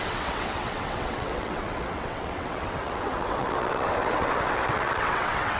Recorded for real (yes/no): no